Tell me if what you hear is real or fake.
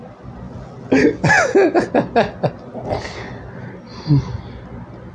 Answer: real